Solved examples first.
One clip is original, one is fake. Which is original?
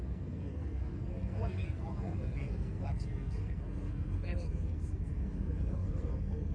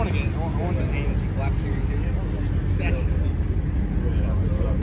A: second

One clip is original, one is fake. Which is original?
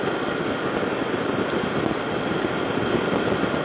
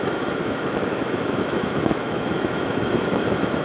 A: first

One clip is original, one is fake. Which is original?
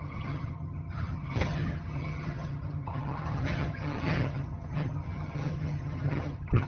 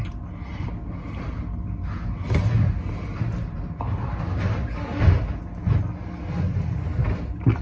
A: second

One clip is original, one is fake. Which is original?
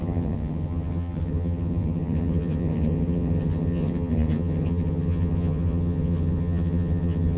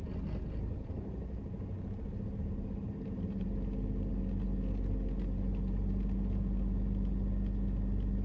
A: second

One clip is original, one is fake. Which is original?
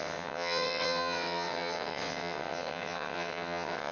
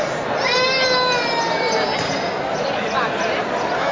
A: second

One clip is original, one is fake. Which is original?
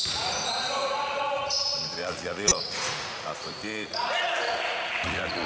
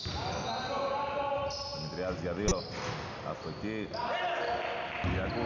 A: second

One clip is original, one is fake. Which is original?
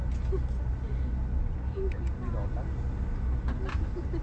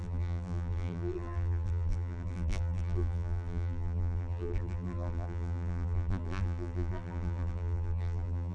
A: first